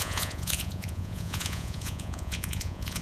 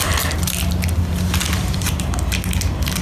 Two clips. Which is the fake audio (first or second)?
first